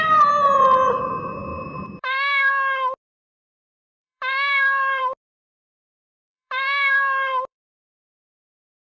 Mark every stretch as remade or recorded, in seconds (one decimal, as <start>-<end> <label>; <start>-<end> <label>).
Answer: 0.0-1.5 recorded; 1.5-2.5 remade; 2.5-4.0 recorded; 4.0-5.0 remade; 5.0-6.0 recorded; 6.0-8.2 remade; 8.2-8.9 recorded